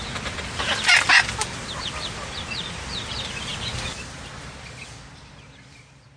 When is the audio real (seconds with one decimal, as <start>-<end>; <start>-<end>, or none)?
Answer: 0.7-1.8; 3.5-4.4